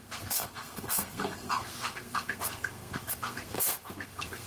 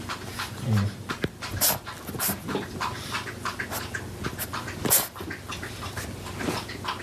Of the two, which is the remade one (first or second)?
first